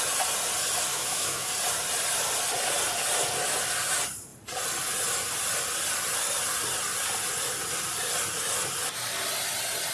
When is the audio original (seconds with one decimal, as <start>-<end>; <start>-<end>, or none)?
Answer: 0.0-0.9; 1.5-9.9